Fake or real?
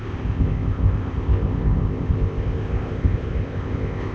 fake